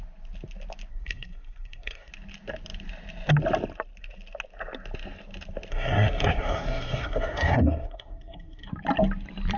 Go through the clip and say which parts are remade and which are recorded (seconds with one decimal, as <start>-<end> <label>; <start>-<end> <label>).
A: 0.0-0.9 recorded; 0.9-2.1 remade; 2.1-5.7 recorded; 5.7-8.7 remade; 8.7-9.6 recorded